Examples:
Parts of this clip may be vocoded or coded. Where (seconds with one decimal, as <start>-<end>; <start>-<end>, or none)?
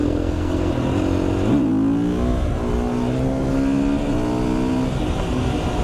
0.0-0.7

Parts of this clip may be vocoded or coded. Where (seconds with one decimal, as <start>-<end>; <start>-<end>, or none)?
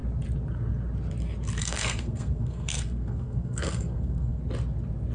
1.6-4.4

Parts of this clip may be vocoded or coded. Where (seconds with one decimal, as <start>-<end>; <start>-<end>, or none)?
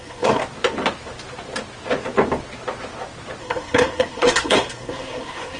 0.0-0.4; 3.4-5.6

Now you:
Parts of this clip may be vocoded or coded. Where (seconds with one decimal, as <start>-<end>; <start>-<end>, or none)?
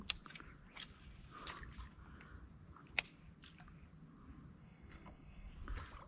4.6-5.5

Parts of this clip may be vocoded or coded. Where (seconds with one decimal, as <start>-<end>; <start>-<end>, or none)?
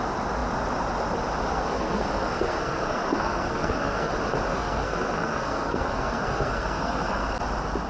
1.5-4.1; 4.5-7.4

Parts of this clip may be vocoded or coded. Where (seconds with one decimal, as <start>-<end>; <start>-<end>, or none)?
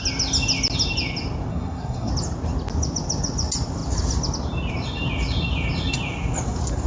1.5-2.1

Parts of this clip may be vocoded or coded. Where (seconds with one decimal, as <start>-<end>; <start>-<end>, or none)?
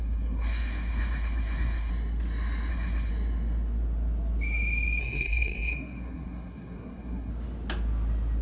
0.0-1.9; 2.7-3.1; 5.0-7.3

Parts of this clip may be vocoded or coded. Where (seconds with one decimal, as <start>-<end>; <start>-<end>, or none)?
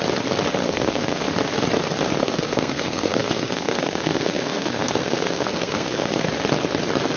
0.6-1.2; 2.2-6.3